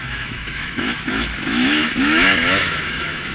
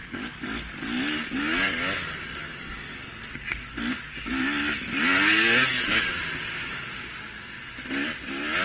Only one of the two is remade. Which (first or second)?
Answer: first